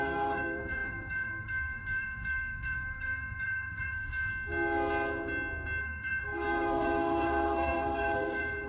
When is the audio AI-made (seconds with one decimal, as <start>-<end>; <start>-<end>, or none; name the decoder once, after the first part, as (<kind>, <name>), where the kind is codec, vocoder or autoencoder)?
0.0-4.3 (codec, SNAC); 5.8-8.7